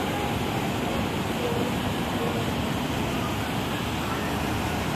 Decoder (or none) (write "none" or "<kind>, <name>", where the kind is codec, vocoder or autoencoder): none